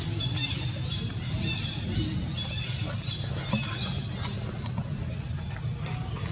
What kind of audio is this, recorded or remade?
recorded